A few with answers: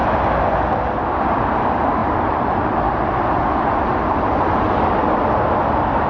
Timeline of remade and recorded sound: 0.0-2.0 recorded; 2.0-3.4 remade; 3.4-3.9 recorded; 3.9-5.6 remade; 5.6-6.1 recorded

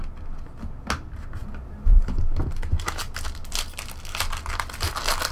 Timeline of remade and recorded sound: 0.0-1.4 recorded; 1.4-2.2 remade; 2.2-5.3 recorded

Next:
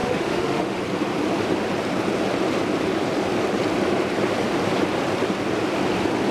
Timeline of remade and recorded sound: 0.0-0.8 remade; 0.8-6.3 recorded